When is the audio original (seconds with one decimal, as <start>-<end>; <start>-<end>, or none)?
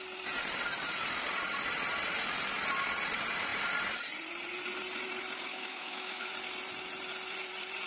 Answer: 0.0-5.5; 6.3-7.9